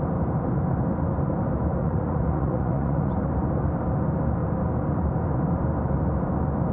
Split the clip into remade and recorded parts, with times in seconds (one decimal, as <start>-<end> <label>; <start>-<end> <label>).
0.0-1.8 recorded; 1.8-3.1 remade; 3.1-6.7 recorded